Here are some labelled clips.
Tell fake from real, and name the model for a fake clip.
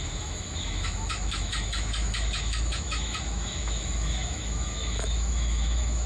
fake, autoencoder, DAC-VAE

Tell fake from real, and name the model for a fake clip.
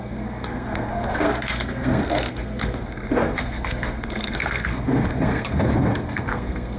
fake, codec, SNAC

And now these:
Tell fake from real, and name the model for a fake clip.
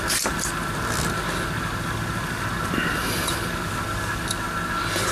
real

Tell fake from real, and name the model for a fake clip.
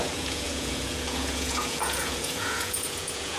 fake, vocoder, Vocos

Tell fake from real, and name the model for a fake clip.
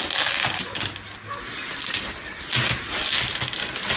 real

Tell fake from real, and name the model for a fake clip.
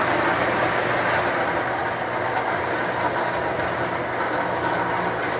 real